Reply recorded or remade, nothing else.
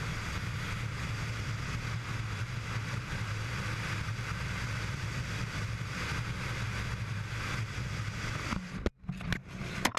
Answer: recorded